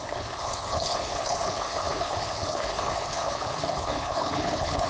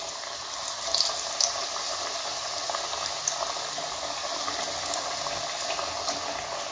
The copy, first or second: first